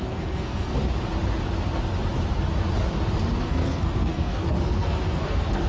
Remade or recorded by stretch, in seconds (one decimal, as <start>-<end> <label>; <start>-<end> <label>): 0.0-0.7 remade; 0.7-3.4 recorded; 3.4-5.7 remade